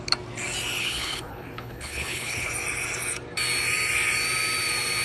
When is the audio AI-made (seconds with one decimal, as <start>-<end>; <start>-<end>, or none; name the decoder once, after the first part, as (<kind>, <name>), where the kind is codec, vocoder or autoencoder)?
0.8-2.5 (codec, HILCodec)